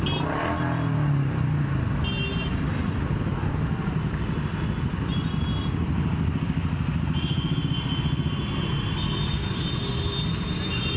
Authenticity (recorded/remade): recorded